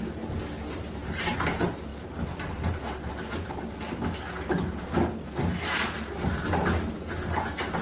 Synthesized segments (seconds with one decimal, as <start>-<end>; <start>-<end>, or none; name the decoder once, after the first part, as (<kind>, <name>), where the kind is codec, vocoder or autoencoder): none

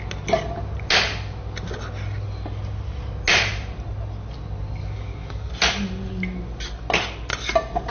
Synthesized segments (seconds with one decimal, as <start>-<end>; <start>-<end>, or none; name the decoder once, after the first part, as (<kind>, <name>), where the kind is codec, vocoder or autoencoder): 4.8-5.5 (codec, DAC)

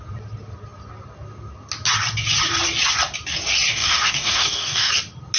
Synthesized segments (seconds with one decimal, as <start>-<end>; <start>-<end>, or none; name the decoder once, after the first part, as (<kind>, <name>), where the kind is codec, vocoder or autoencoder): 3.7-4.9 (codec, DAC)

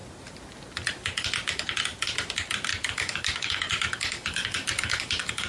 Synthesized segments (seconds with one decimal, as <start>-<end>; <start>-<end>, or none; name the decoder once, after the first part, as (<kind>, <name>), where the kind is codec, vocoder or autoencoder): 2.7-5.5 (codec, DAC)

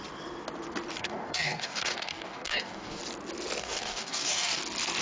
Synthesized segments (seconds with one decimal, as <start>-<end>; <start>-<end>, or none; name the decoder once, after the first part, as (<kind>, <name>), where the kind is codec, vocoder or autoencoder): 1.0-3.0 (codec, DAC); 3.6-4.6

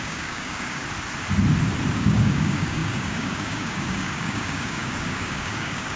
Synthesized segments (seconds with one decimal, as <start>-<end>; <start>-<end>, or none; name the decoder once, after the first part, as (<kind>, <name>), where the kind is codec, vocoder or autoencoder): 0.0-0.8 (codec, DAC); 1.9-6.0